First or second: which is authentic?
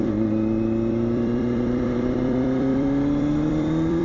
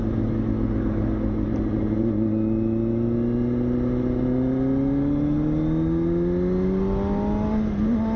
second